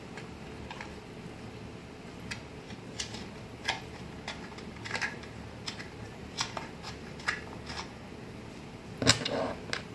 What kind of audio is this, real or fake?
real